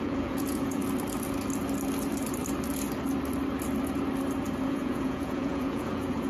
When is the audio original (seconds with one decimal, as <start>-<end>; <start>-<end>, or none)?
0.8-4.6